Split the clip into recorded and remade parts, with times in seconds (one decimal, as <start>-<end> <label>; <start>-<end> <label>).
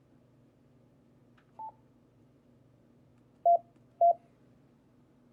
0.0-1.2 remade; 1.2-2.2 recorded; 2.2-3.1 remade; 3.1-3.9 recorded; 3.9-5.3 remade